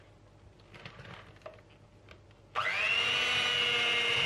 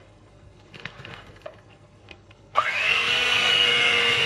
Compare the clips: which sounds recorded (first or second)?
first